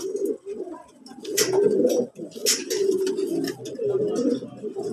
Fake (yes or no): no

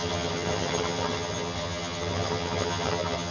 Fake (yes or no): yes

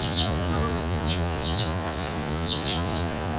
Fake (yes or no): yes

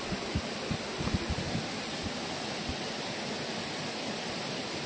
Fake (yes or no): yes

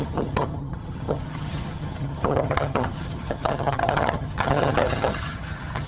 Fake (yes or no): yes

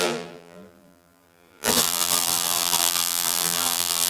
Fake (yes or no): yes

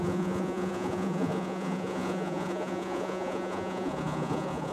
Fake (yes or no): yes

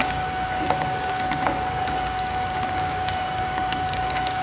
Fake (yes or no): yes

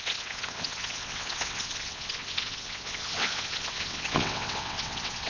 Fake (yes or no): yes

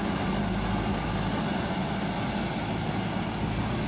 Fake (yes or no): no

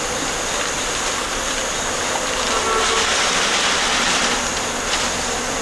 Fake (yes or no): no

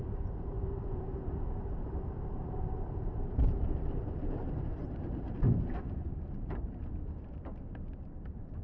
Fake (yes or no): yes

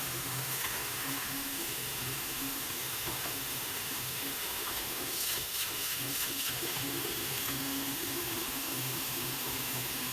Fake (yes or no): yes